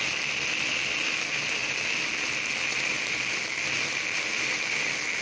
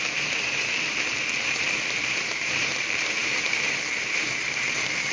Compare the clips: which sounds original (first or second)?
first